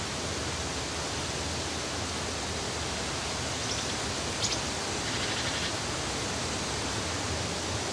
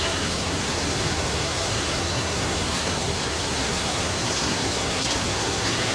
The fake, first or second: second